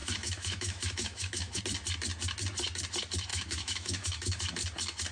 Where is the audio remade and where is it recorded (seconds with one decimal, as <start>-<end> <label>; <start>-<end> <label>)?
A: 0.0-1.6 remade; 1.6-3.3 recorded; 3.3-4.4 remade; 4.4-5.1 recorded